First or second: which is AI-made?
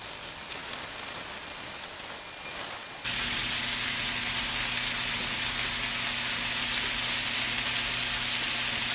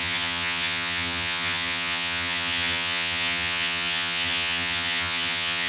second